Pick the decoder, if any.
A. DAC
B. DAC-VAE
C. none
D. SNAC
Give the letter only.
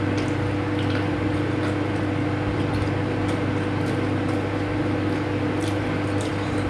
C